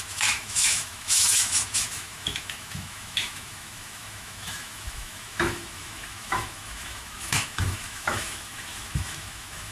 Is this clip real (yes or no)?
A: no